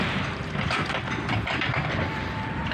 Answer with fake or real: fake